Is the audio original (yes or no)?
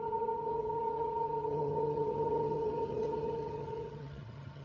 no